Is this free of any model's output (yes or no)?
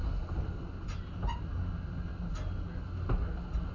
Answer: yes